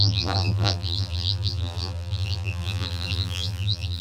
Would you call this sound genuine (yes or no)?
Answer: no